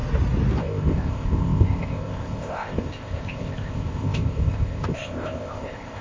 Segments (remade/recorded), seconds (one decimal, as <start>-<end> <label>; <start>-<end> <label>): 0.0-0.6 recorded; 0.6-6.0 remade